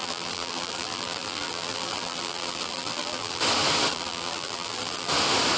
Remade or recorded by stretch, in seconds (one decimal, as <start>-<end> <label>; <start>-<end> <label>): 0.0-3.4 remade; 3.4-3.9 recorded; 3.9-5.1 remade; 5.1-5.6 recorded